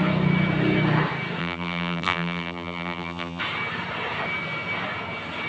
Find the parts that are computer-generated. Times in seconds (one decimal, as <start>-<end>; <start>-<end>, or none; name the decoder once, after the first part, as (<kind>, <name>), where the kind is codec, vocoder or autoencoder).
1.4-3.4 (vocoder, BigVGAN v2)